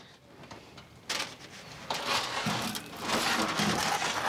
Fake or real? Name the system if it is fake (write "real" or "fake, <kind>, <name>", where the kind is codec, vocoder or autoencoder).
real